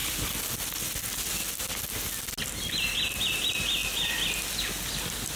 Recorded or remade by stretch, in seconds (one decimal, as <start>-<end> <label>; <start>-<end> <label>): 0.0-5.4 recorded

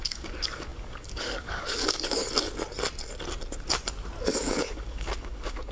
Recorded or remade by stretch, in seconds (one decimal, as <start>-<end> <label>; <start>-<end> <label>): 0.0-2.2 remade; 2.2-4.2 recorded; 4.2-5.7 remade

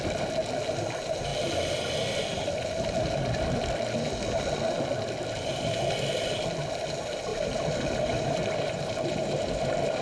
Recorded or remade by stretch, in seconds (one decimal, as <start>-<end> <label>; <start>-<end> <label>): 0.0-7.3 recorded; 7.3-10.0 remade

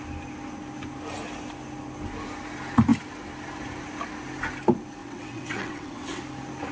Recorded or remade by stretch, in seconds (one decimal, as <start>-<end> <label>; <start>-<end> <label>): 0.0-5.0 recorded; 5.0-6.2 remade; 6.2-6.7 recorded